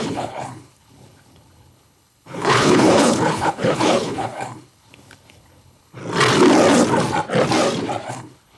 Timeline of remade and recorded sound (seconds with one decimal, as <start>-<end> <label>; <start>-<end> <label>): 0.0-6.0 remade; 6.0-8.1 recorded; 8.1-8.6 remade